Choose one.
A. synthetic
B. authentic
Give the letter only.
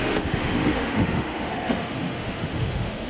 A